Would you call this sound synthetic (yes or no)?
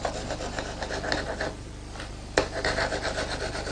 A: no